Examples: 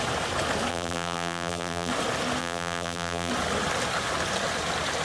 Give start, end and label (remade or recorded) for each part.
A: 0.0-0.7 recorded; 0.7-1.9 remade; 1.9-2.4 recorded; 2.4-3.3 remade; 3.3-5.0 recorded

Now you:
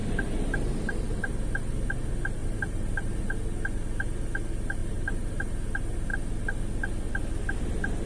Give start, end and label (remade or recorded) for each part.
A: 0.0-1.3 remade; 1.3-2.4 recorded; 2.4-3.3 remade; 3.3-4.8 recorded; 4.8-5.4 remade; 5.4-8.1 recorded

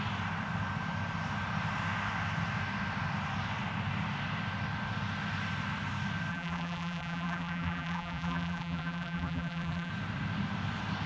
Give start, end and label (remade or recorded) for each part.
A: 0.0-6.3 recorded; 6.3-9.9 remade; 9.9-11.1 recorded

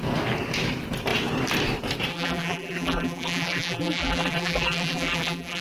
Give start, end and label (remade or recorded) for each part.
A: 0.0-2.1 recorded; 2.1-5.6 remade

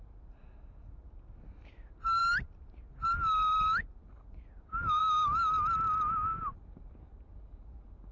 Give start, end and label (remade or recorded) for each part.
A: 0.0-8.1 recorded